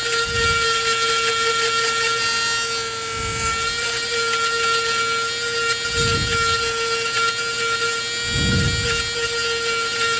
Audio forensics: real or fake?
real